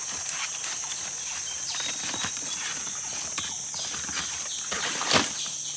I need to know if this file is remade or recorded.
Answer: recorded